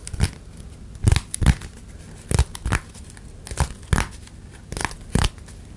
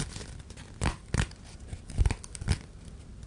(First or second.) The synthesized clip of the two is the second